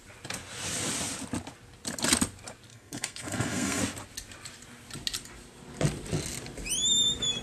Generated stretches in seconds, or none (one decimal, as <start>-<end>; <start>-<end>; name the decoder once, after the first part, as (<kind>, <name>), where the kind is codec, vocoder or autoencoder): 2.7-3.8 (codec, SNAC)